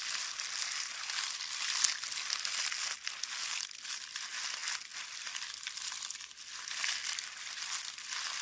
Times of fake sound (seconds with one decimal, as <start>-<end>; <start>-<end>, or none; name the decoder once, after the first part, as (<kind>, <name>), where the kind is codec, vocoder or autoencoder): none

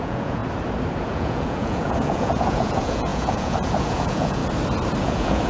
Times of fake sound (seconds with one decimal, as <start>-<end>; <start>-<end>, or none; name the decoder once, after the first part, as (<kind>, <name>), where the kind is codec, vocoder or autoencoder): 0.0-0.4 (vocoder, Vocos); 1.0-4.4; 5.0-5.5

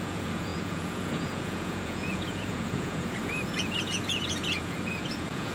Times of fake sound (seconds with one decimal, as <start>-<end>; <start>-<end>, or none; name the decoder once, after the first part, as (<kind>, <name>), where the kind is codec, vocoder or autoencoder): 0.0-5.5 (vocoder, Vocos)

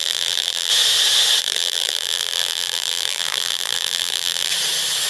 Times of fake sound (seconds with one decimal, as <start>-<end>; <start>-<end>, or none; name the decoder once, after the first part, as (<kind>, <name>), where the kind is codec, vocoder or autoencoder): 0.0-0.7 (vocoder, BigVGAN v2); 1.4-4.5

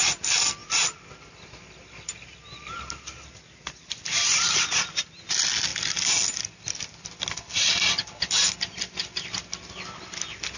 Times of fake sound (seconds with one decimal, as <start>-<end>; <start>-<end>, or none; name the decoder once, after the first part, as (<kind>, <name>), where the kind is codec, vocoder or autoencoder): none

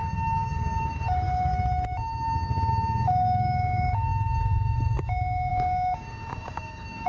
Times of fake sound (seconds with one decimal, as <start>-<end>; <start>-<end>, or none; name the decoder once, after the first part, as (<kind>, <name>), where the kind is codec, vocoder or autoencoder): 0.0-1.5 (codec, DAC); 2.7-7.1